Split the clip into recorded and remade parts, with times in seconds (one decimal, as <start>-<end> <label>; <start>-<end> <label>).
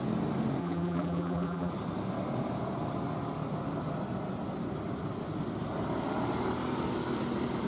0.0-0.6 recorded; 0.6-1.7 remade; 1.7-7.7 recorded